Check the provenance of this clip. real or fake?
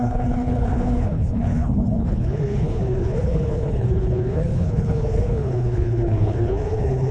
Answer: fake